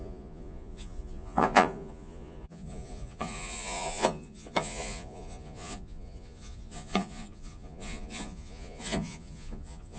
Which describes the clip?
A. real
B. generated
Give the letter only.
B